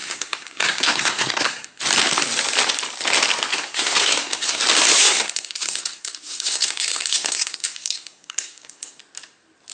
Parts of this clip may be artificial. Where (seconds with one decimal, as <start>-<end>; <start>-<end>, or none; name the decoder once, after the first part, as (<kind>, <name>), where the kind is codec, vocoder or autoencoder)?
0.0-1.8 (codec, SNAC); 3.5-4.6; 5.0-9.0